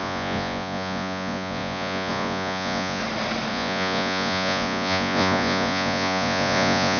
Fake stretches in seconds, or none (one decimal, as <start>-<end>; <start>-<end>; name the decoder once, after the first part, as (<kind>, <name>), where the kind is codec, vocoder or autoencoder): 0.0-3.0 (vocoder, Vocos); 3.5-7.0